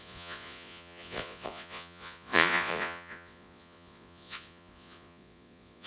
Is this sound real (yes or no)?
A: no